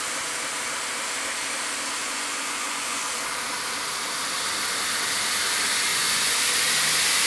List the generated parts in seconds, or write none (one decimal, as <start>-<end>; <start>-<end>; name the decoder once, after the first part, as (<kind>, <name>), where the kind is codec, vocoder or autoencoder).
2.0-3.1 (vocoder, Vocos); 5.9-6.4